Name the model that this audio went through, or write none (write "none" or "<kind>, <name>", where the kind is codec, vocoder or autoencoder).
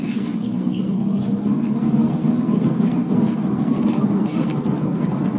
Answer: codec, SNAC